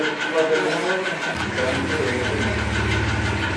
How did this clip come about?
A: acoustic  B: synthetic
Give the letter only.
A